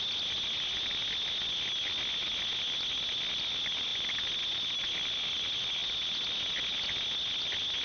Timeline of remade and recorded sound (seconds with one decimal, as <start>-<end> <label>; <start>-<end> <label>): 0.0-7.8 recorded